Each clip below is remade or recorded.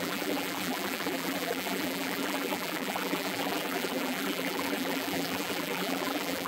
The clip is remade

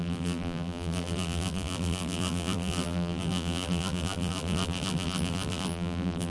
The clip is remade